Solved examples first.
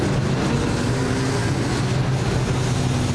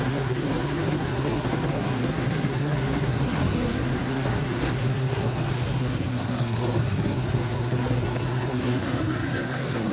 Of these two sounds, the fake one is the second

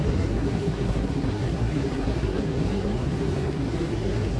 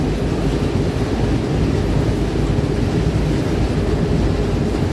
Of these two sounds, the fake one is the first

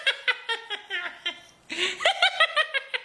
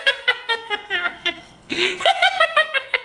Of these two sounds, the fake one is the second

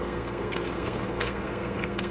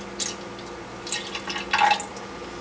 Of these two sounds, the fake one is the first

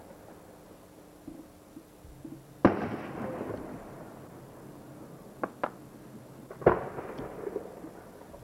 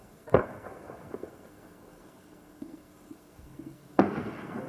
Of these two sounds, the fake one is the second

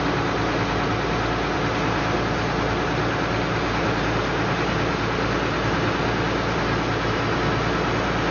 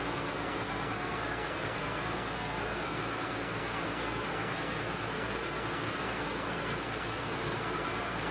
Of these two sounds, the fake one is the second